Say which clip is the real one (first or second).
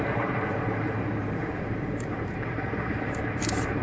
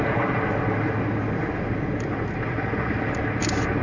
second